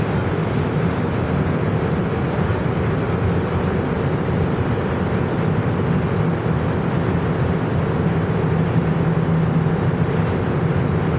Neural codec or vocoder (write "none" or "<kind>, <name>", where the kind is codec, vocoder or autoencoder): none